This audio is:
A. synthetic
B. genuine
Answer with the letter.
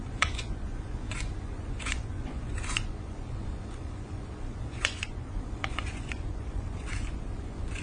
A